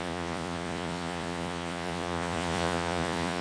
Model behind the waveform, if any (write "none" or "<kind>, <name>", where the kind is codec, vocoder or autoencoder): vocoder, Vocos